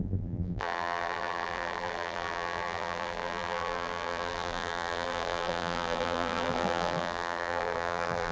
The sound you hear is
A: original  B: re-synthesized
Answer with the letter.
B